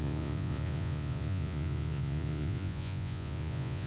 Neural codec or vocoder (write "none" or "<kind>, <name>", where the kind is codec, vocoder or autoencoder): vocoder, Vocos